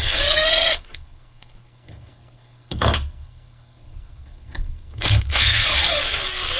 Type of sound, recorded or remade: remade